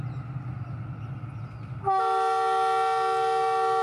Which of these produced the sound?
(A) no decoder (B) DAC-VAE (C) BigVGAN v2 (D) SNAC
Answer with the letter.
A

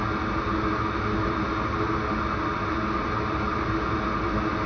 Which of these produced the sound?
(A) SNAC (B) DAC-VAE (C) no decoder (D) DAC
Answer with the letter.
C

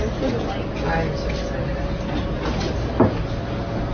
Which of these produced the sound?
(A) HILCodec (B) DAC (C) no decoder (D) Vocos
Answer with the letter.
C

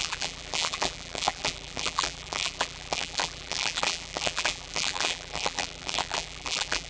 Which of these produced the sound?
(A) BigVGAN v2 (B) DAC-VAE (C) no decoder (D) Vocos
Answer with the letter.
A